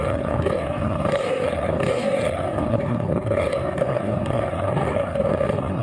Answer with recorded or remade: remade